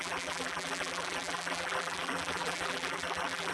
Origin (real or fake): fake